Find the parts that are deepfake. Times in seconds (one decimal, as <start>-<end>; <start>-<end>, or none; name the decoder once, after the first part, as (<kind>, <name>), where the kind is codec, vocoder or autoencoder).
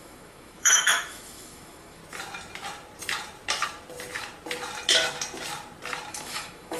0.0-2.0 (autoencoder, DAC-VAE); 6.1-6.8